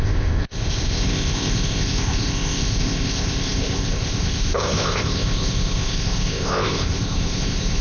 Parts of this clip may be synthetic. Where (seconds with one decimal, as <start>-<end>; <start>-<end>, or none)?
0.0-7.8